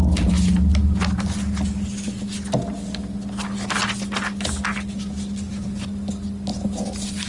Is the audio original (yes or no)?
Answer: yes